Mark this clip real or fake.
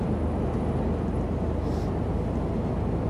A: real